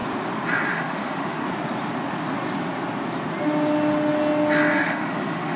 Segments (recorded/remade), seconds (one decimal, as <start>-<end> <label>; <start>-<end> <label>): 0.0-0.7 recorded; 0.7-1.4 remade; 1.4-4.8 recorded; 4.8-5.6 remade